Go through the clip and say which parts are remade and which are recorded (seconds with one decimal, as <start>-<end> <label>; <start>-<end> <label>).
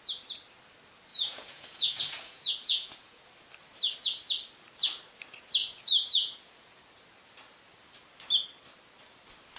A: 0.0-1.1 recorded; 1.1-3.2 remade; 3.2-5.6 recorded; 5.6-6.8 remade; 6.8-9.6 recorded